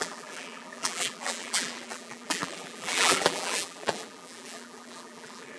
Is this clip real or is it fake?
fake